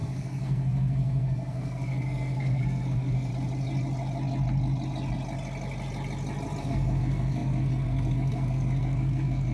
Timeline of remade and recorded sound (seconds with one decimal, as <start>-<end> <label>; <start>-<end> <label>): 0.0-3.3 remade; 3.3-6.6 recorded; 6.6-9.5 remade